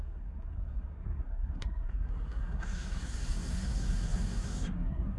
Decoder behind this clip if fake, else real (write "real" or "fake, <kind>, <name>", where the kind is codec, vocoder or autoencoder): fake, codec, SNAC